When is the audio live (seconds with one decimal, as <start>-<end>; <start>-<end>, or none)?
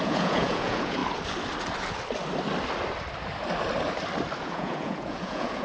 1.0-4.4